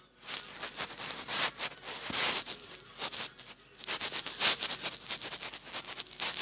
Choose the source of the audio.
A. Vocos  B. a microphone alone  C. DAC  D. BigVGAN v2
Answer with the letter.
B